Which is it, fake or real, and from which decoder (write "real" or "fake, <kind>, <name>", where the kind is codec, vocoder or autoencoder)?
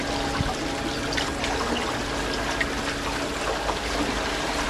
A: real